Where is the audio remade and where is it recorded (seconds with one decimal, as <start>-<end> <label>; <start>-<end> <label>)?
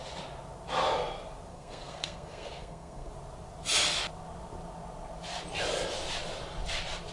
0.0-1.5 recorded; 1.5-3.1 remade; 3.1-7.1 recorded